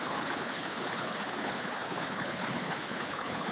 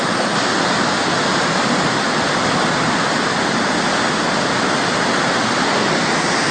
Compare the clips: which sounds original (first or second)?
second